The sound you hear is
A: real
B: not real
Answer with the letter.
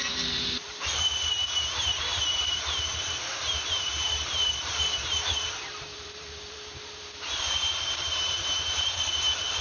B